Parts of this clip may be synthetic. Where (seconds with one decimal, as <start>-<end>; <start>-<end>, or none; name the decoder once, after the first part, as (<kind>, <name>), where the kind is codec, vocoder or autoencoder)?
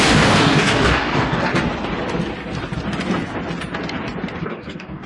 0.0-1.5 (codec, DAC); 4.4-5.1